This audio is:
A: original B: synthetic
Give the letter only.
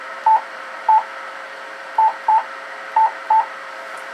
B